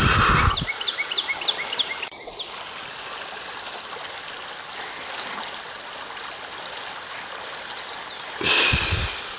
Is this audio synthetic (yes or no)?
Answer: no